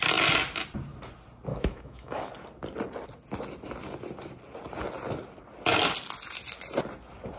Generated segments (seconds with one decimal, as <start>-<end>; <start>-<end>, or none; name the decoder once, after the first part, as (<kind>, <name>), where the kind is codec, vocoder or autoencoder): 1.5-2.3 (autoencoder, DAC-VAE)